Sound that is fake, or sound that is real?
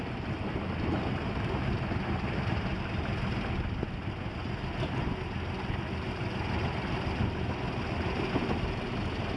real